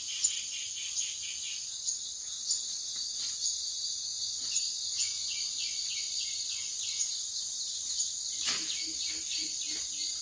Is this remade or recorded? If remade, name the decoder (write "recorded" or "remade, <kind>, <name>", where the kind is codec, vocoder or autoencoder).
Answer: recorded